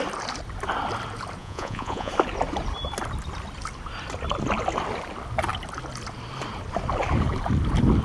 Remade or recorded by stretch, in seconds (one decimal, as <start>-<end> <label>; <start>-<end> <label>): 0.0-1.4 recorded; 1.4-2.1 remade; 2.1-8.0 recorded